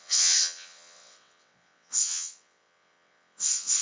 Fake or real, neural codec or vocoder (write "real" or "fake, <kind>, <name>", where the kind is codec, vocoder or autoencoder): fake, vocoder, WaveNeXt